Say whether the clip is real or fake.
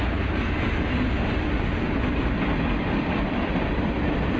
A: real